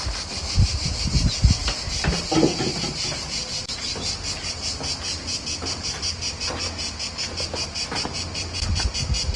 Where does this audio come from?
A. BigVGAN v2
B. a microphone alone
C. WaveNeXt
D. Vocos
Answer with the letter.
B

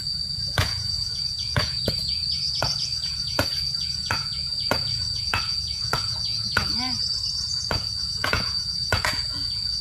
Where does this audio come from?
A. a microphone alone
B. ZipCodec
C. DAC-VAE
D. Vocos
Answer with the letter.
D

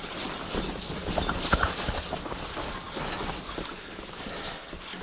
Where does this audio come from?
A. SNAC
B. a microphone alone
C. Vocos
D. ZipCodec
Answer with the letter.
B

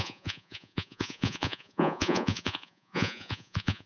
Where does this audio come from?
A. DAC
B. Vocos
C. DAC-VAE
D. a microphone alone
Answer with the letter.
B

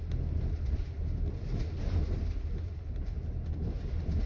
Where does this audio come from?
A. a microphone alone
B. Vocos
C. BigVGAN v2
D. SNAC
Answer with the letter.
A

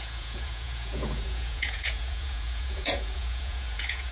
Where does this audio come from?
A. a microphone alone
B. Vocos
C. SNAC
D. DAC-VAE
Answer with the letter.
B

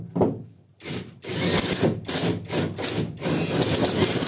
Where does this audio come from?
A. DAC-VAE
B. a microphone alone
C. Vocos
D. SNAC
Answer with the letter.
B